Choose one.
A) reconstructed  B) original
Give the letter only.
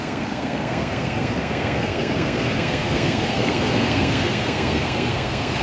A